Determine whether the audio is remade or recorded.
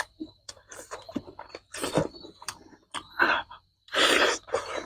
remade